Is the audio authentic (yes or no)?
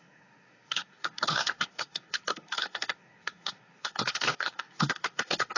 no